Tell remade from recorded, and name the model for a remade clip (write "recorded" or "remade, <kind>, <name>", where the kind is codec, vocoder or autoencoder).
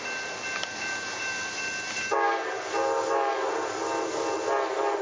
recorded